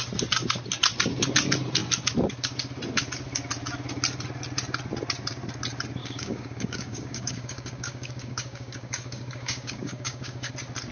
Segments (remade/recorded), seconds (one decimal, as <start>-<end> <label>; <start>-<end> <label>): 0.0-6.0 recorded; 6.0-10.5 remade; 10.5-10.9 recorded